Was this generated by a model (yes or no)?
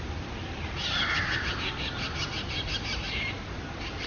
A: no